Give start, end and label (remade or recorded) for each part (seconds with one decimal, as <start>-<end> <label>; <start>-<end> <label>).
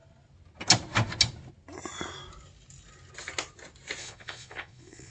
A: 0.0-4.0 recorded; 4.0-5.1 remade